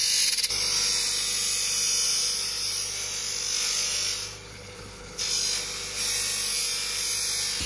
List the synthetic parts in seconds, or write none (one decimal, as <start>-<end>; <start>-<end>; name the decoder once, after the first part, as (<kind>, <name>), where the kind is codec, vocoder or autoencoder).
4.5-5.2 (codec, HILCodec)

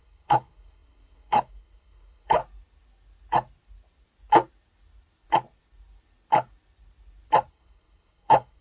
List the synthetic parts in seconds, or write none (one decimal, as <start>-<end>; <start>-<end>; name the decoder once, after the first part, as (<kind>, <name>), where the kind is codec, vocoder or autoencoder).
0.0-2.4 (codec, HILCodec); 7.5-8.6

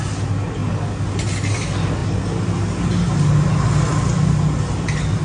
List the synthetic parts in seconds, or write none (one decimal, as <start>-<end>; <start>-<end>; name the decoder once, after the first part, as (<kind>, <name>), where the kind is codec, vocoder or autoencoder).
none

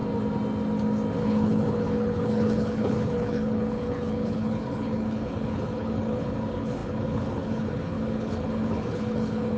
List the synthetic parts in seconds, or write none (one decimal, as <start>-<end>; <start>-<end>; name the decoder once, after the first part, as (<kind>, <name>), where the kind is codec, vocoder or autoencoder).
1.2-9.6 (codec, HILCodec)

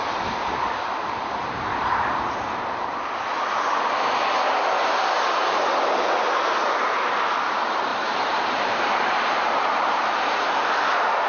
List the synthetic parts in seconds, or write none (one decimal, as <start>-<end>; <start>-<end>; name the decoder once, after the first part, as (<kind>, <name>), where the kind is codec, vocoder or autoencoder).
0.0-3.0 (vocoder, BigVGAN v2); 6.8-11.3